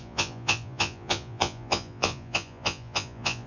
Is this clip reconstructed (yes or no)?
yes